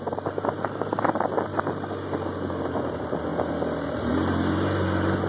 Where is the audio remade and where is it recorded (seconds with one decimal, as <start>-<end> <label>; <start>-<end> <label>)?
0.0-5.3 recorded